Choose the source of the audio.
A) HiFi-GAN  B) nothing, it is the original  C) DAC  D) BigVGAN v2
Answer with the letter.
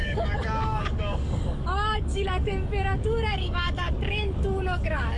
C